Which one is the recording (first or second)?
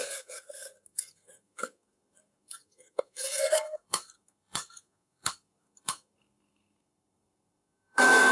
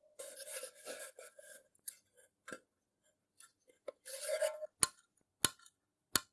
second